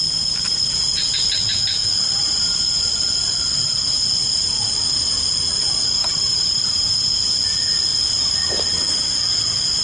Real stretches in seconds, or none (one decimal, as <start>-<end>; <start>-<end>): 0.0-6.0; 7.2-9.8